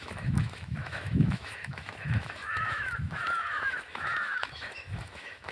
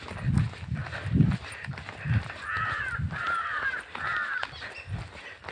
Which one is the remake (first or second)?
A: first